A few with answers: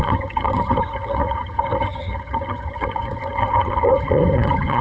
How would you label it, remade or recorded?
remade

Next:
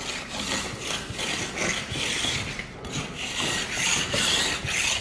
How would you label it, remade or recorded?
recorded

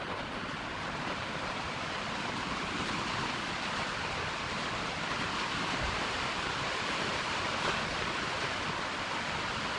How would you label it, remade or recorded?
remade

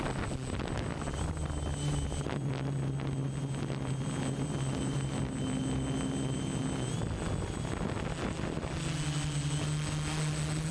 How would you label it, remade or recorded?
recorded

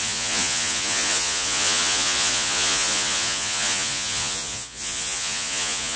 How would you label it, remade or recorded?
remade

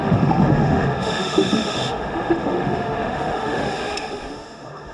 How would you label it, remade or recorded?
remade